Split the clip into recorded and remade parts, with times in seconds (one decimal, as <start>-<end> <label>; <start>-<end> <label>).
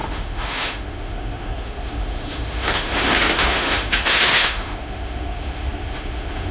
0.0-6.5 remade